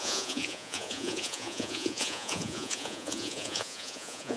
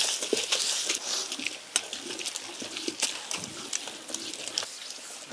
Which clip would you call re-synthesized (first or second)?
first